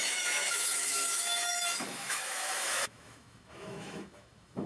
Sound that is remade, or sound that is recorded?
remade